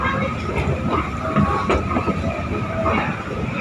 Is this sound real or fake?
real